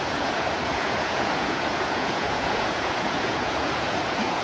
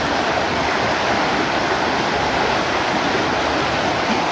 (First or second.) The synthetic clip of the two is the first